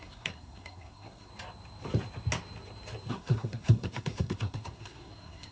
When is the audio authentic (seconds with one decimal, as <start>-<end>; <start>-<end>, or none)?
1.3-3.1